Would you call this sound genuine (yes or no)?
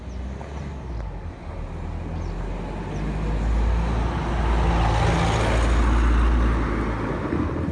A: yes